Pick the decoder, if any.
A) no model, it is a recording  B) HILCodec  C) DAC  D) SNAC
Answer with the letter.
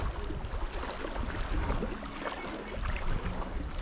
A